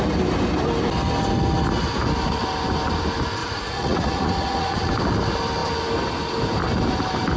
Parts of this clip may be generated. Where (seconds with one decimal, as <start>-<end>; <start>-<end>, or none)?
3.4-4.9